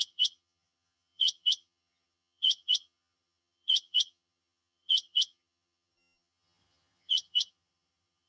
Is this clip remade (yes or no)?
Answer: yes